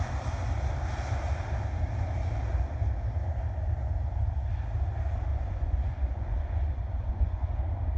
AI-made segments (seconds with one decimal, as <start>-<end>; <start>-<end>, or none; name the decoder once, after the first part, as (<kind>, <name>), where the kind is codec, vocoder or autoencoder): 5.3-7.6 (vocoder, Vocos)